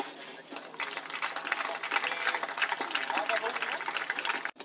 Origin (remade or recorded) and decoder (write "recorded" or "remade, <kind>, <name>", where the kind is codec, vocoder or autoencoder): recorded